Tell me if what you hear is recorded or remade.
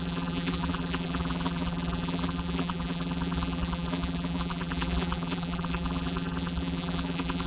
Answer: remade